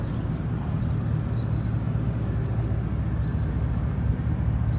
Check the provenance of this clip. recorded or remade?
recorded